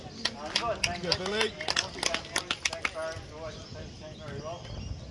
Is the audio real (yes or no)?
yes